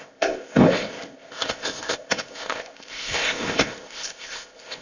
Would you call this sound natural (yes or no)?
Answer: no